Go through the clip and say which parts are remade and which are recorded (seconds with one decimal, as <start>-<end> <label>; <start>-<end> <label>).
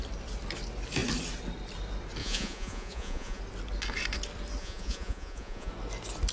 0.0-2.2 recorded; 2.2-3.4 remade; 3.4-4.6 recorded; 4.6-5.7 remade; 5.7-6.3 recorded